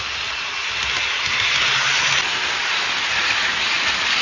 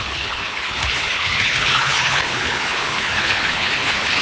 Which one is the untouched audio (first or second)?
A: first